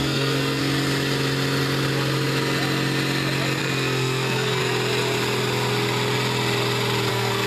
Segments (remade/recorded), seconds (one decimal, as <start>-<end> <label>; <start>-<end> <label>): 0.0-0.6 remade; 0.6-3.6 recorded; 3.6-4.6 remade; 4.6-7.1 recorded; 7.1-7.5 remade